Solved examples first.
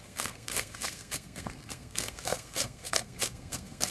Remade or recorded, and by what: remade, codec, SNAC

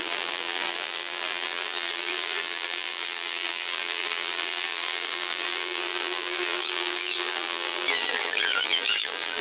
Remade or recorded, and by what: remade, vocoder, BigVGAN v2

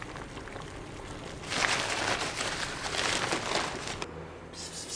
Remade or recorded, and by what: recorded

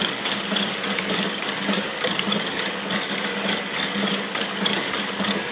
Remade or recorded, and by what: remade, codec, DAC